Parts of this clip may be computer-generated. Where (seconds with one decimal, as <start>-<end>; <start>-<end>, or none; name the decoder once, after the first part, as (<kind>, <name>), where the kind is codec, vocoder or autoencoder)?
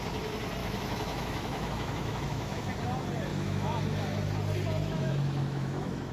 0.6-2.7 (autoencoder, DAC-VAE); 3.3-3.8; 4.8-6.1